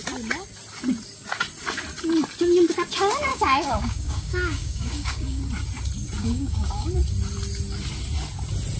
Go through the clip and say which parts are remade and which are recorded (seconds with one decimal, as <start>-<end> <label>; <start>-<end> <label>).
0.0-3.3 recorded; 3.3-5.4 remade; 5.4-6.2 recorded; 6.2-6.9 remade; 6.9-8.8 recorded